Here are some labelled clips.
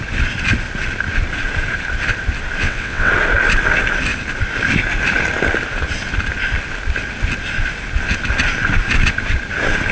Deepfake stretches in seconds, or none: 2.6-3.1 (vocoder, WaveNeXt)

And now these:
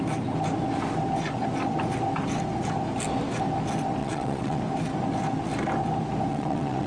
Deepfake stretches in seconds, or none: 4.0-4.6 (vocoder, WaveNeXt); 6.3-6.9